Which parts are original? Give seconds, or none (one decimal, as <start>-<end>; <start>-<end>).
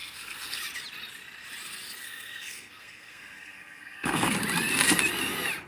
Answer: 0.6-2.0; 4.3-5.7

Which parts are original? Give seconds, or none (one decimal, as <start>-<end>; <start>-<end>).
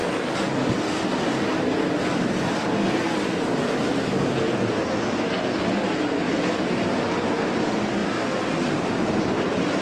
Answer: 0.0-9.8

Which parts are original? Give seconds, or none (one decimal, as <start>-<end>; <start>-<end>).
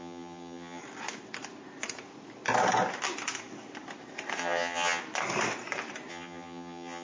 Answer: 0.8-4.4; 5.0-6.1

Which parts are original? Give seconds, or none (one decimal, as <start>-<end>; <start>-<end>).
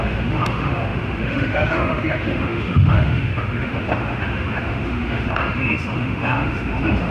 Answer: none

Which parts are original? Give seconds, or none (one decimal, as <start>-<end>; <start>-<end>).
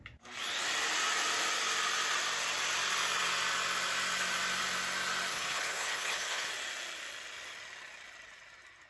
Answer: 0.0-5.3; 6.5-8.9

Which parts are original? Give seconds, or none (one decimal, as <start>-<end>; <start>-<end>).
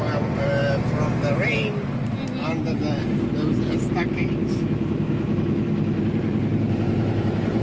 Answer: 0.0-4.4; 6.0-7.6